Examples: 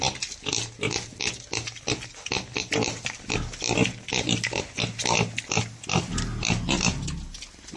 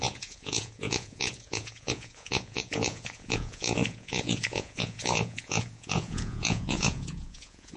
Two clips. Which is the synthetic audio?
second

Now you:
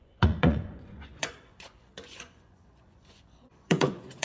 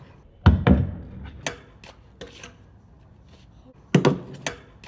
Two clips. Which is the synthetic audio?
first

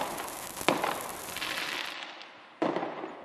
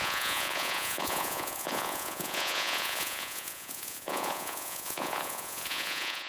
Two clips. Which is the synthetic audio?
second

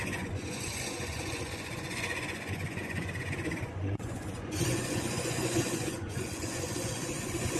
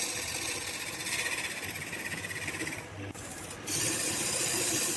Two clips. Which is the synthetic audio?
first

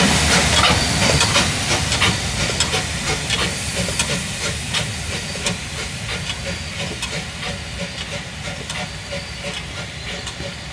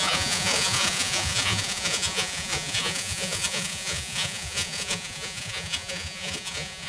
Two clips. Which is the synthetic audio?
second